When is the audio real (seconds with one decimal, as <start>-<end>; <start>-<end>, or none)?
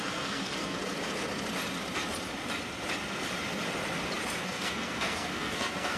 0.8-4.4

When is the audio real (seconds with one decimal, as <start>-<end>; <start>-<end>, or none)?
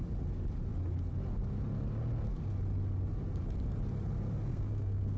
0.0-4.5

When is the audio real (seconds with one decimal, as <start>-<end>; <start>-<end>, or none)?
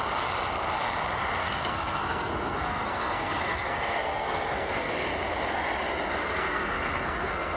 0.0-1.4; 4.9-6.2